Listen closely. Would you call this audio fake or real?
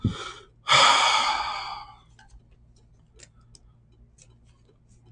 real